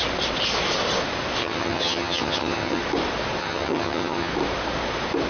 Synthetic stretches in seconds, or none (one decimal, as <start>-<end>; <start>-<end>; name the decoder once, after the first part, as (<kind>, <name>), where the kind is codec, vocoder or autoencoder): 1.4-2.8 (vocoder, HiFi-GAN); 3.4-4.3